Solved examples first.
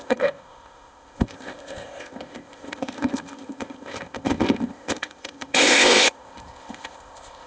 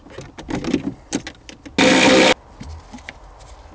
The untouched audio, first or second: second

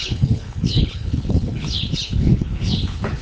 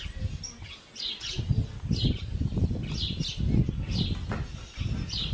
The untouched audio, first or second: second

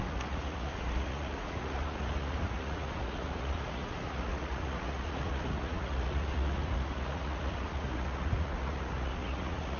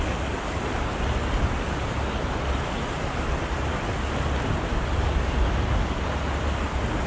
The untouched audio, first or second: second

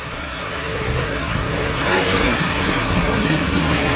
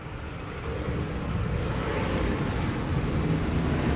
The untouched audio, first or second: second